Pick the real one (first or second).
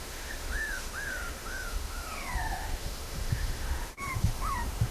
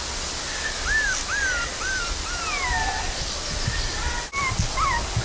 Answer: second